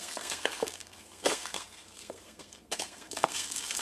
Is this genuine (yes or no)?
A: no